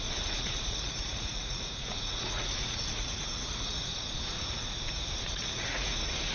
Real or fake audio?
fake